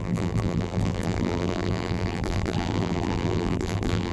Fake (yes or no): yes